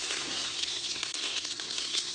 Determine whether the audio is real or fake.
fake